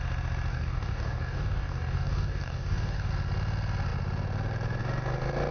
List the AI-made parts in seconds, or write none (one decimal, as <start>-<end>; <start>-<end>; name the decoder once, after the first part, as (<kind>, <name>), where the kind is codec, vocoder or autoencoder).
0.5-3.1 (codec, DAC)